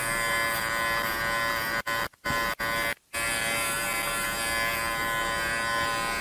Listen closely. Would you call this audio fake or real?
real